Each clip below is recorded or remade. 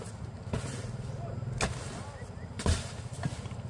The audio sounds recorded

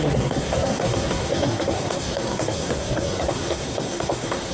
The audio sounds remade